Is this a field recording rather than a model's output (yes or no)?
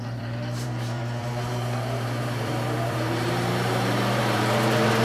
no